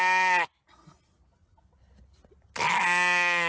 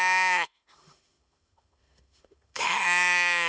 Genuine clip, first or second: first